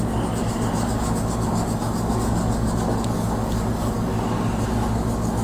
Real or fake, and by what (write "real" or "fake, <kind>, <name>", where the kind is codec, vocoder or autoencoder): fake, codec, DAC